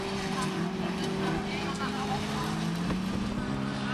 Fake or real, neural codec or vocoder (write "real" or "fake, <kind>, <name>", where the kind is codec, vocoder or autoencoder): real